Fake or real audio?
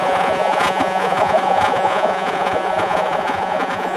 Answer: fake